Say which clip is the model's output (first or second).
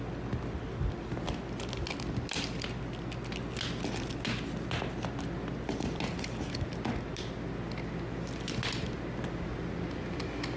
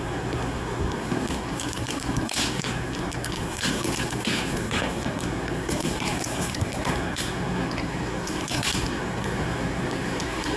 second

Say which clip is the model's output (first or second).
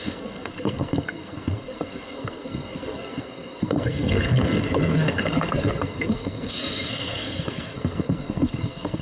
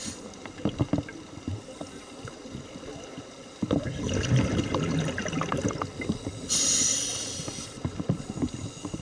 first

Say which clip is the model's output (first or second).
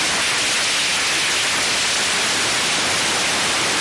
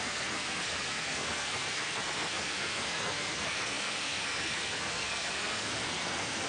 second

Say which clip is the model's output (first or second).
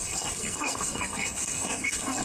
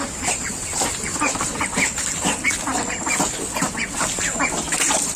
first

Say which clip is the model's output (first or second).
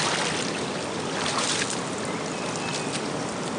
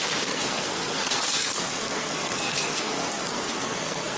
second